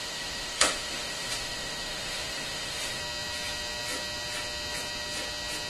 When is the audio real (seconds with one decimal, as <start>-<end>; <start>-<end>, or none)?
3.0-5.7

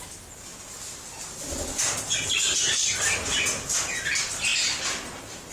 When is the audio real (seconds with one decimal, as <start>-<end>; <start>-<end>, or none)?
0.0-5.5

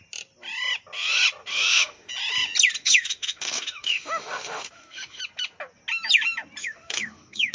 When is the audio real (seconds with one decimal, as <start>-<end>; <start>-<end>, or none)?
0.0-1.5; 2.1-2.8; 5.2-6.6

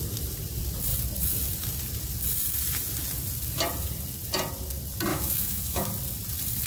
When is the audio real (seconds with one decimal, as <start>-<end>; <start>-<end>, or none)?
0.0-5.1; 5.9-6.7

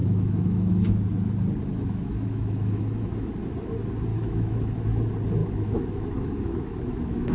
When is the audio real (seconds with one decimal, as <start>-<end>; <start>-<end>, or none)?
0.9-1.7; 3.3-4.1; 4.8-5.4

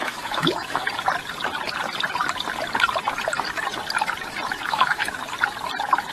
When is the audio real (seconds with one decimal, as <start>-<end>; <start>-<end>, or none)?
0.8-4.5; 5.0-6.1